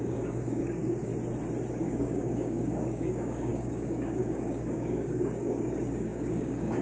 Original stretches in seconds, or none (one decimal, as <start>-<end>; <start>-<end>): 1.1-1.7

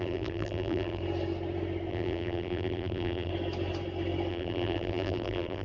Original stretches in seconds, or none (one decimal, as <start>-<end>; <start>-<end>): 1.0-1.9; 3.3-4.3

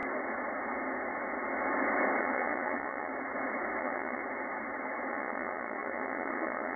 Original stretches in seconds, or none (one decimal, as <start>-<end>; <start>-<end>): 0.0-2.2; 3.1-3.8; 4.2-5.1

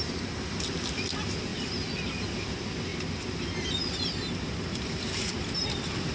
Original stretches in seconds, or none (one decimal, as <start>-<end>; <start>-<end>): 1.5-2.4; 2.9-4.4

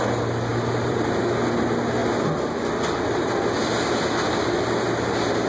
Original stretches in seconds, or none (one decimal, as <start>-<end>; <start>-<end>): 0.0-0.5; 1.2-5.5

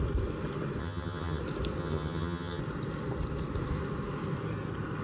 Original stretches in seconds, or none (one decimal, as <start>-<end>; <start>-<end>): 0.0-0.8; 1.4-1.8; 2.6-5.0

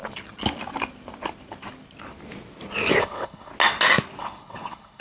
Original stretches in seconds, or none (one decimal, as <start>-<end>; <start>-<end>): 0.0-3.0; 3.5-4.2